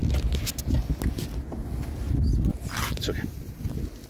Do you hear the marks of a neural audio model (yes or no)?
no